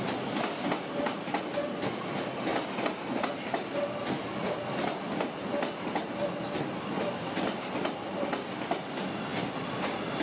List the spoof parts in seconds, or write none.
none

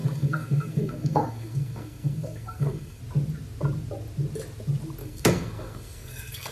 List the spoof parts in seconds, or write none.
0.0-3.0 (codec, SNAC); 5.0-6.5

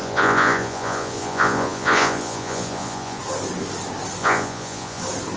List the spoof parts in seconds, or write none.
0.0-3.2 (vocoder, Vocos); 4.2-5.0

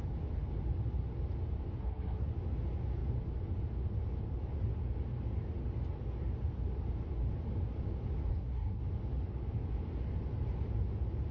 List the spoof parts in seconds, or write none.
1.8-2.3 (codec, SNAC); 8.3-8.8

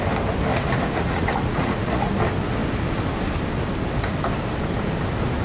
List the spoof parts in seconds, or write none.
0.5-2.1 (vocoder, Vocos)

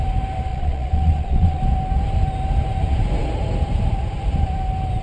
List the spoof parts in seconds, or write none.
0.5-1.6 (vocoder, Vocos)